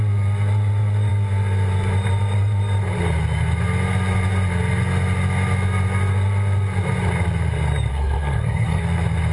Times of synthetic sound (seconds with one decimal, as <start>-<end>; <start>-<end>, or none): 7.9-8.8